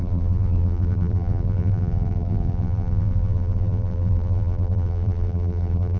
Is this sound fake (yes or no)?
yes